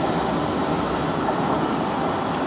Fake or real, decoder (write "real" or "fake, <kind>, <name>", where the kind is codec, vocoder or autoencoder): real